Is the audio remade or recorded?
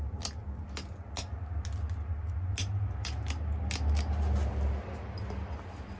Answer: recorded